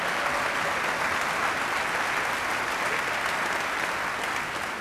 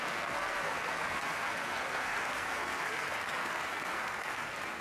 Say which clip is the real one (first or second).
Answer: first